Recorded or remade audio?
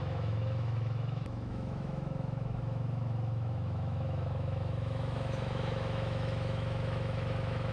remade